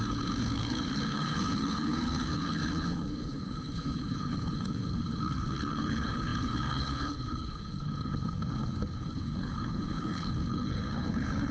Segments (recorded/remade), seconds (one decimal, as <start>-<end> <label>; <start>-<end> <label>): 0.0-11.5 remade